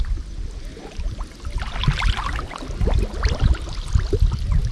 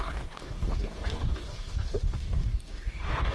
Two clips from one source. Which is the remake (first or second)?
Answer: second